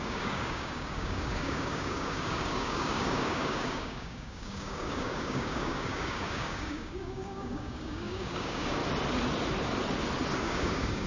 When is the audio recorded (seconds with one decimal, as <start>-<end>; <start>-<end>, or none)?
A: 8.8-10.4